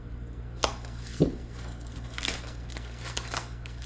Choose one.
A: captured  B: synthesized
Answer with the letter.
B